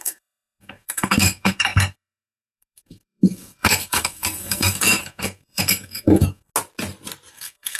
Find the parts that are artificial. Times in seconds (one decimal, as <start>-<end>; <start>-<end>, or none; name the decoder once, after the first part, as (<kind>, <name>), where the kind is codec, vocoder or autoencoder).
0.0-6.5 (codec, SNAC); 7.3-7.8